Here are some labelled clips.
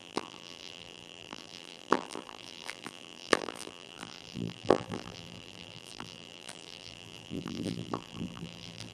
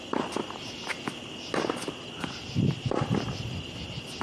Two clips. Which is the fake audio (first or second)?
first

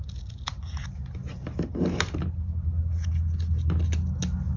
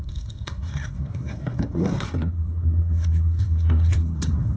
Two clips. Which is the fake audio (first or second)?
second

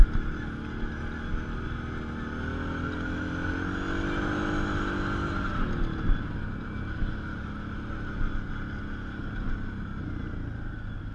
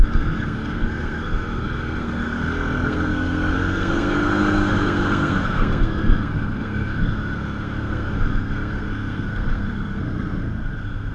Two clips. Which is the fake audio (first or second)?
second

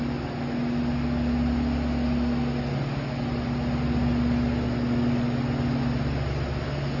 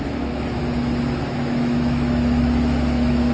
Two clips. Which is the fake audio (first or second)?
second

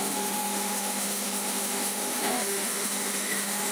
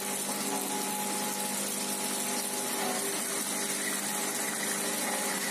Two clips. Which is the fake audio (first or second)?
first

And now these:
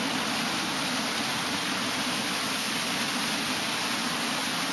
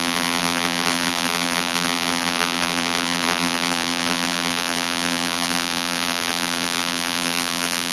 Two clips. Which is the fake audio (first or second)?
second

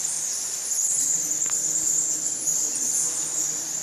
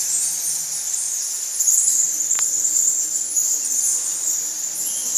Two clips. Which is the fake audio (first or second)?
first